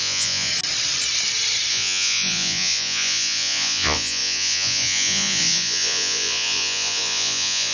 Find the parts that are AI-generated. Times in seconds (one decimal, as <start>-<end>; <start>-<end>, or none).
0.0-0.5; 1.7-7.7